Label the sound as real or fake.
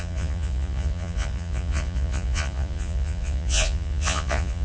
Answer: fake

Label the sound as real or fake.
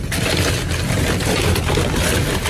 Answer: real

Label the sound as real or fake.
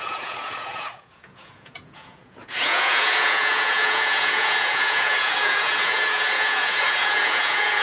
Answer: fake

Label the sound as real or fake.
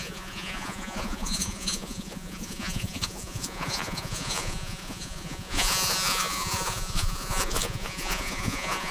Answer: fake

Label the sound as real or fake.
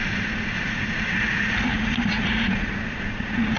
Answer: fake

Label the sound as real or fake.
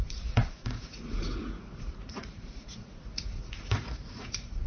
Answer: fake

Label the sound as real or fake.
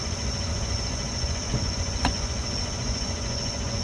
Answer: fake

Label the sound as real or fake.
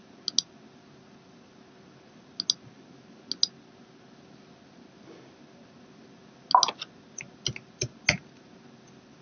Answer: real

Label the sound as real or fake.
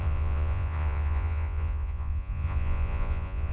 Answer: fake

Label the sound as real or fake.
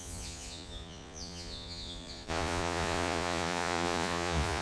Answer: fake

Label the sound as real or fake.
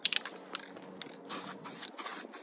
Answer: real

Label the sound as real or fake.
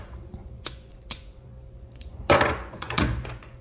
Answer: fake